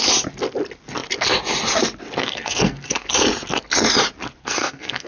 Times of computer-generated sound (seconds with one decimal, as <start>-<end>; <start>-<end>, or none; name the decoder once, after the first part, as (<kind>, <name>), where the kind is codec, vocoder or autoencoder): 2.2-3.1 (codec, SNAC); 4.4-5.1